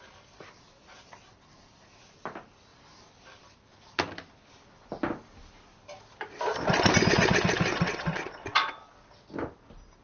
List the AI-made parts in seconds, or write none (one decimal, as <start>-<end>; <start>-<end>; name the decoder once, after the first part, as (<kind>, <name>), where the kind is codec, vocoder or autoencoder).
7.7-8.7 (vocoder, WaveNeXt)